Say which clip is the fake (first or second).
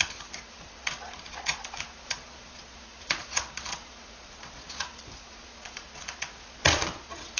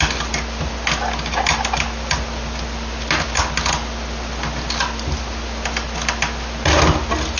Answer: first